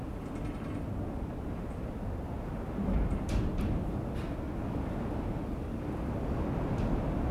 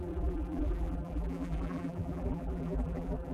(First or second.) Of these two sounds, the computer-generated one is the second